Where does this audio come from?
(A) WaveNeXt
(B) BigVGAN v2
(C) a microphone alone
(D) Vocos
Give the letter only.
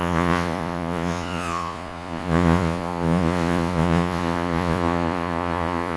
D